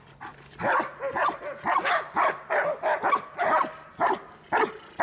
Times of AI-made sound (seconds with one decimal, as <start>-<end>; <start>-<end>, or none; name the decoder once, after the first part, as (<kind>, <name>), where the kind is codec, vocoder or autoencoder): none